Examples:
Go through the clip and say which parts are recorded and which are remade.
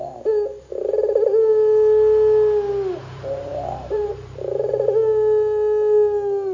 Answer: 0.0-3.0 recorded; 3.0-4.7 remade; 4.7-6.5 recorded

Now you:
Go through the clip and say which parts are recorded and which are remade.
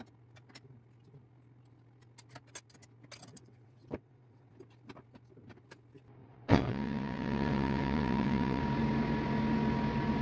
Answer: 0.0-3.3 recorded; 3.3-4.5 remade; 4.5-6.2 recorded; 6.2-8.6 remade; 8.6-10.2 recorded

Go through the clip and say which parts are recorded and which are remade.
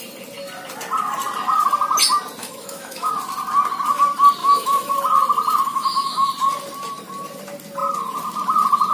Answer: 0.0-2.4 recorded; 2.4-3.1 remade; 3.1-4.4 recorded; 4.4-4.9 remade; 4.9-5.7 recorded; 5.7-6.3 remade; 6.3-8.9 recorded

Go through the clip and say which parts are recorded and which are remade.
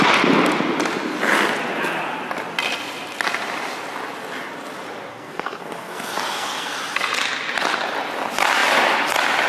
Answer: 0.0-5.1 recorded; 5.1-6.8 remade; 6.8-9.5 recorded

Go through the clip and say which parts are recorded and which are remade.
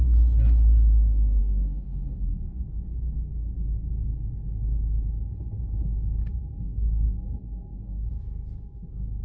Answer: 0.0-1.4 recorded; 1.4-2.6 remade; 2.6-6.5 recorded; 6.5-8.1 remade; 8.1-9.2 recorded